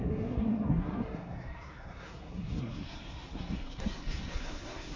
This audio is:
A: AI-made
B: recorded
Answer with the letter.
A